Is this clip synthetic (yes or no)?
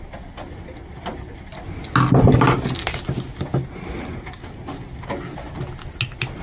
no